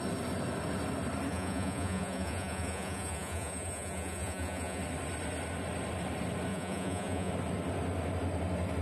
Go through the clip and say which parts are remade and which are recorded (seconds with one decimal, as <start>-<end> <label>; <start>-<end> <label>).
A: 0.0-1.3 recorded; 1.3-4.8 remade; 4.8-6.5 recorded; 6.5-7.3 remade; 7.3-8.8 recorded